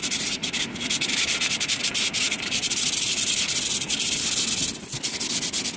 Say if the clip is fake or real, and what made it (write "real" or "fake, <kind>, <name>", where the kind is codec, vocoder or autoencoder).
real